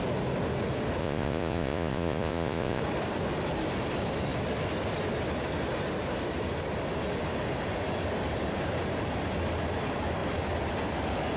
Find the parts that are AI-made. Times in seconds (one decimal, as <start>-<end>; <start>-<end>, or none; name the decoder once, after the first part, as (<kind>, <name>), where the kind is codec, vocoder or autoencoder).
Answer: 1.0-2.8 (vocoder, Vocos)

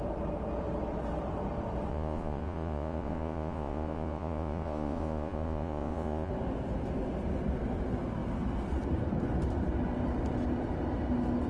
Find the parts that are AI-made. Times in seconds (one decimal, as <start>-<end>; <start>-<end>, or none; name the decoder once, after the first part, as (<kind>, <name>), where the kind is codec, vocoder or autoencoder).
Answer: 1.9-6.3 (vocoder, Vocos)

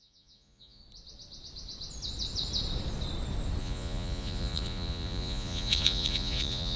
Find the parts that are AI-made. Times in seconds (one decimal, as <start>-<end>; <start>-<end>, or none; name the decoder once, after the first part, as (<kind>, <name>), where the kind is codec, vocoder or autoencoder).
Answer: 0.0-0.8 (vocoder, Vocos); 3.6-6.8

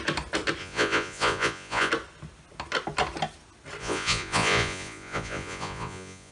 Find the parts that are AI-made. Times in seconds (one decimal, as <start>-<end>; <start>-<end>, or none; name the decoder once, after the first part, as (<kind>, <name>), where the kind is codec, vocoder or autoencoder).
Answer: 0.6-1.9 (vocoder, Vocos); 3.8-6.3

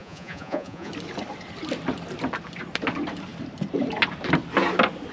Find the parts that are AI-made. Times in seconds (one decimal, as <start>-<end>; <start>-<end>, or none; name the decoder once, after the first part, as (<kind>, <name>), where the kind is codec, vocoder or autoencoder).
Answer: 0.0-0.9 (vocoder, Vocos)

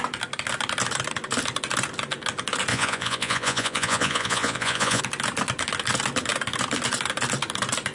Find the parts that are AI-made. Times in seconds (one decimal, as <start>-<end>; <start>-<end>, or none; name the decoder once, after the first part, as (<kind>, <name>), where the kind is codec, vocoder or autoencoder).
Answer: 2.7-5.0 (vocoder, Vocos)

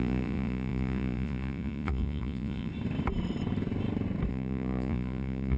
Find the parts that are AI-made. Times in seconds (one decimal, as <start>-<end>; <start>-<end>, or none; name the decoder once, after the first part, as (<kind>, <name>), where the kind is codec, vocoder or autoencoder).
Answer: 0.0-2.7 (vocoder, Vocos); 4.3-5.6

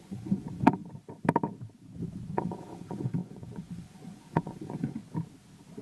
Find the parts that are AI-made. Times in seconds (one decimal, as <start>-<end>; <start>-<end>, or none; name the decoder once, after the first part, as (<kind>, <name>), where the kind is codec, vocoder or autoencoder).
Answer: 0.0-0.8 (vocoder, Vocos); 2.3-5.0